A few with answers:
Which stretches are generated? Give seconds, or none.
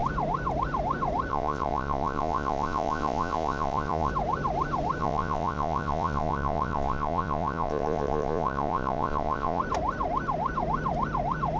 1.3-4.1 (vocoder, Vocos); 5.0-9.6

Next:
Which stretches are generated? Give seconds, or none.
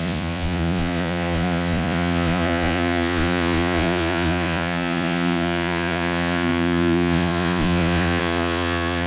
0.0-9.1 (vocoder, Vocos)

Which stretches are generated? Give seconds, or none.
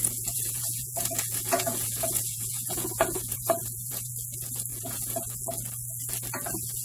0.0-4.1 (vocoder, Vocos); 4.7-5.4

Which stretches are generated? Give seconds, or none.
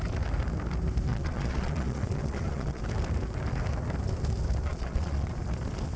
1.1-2.8 (vocoder, Vocos); 4.7-5.3